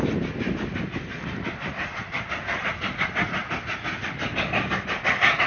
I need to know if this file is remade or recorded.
recorded